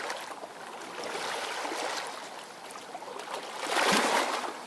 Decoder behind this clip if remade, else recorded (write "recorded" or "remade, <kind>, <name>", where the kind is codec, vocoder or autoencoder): recorded